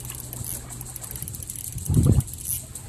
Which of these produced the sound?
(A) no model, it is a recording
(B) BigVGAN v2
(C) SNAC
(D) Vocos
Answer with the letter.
A